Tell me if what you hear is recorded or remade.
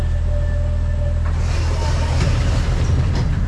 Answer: recorded